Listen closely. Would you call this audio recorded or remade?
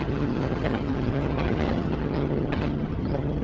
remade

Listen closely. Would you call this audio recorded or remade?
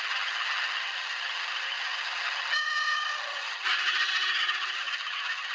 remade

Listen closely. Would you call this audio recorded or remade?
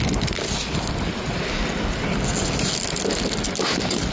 recorded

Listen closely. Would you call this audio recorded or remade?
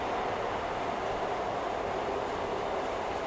recorded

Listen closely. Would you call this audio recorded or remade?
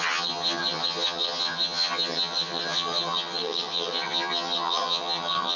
remade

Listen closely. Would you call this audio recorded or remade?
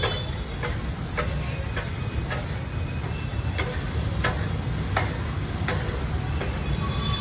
recorded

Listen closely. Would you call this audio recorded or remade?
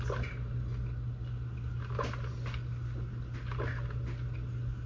recorded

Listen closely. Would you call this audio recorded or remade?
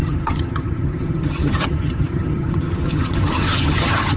remade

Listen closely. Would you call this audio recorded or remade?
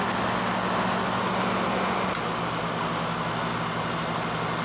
recorded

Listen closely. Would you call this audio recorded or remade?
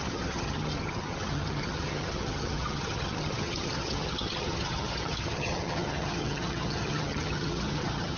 remade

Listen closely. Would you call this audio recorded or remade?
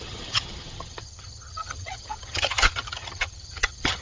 remade